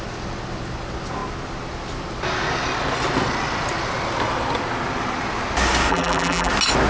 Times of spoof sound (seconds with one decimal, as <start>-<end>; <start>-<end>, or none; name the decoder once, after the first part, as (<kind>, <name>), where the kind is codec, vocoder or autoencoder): 5.9-6.5 (vocoder, BigVGAN v2)